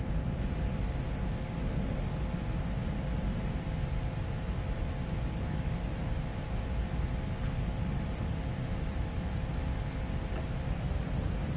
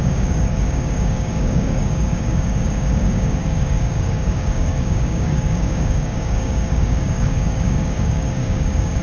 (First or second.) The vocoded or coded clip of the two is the second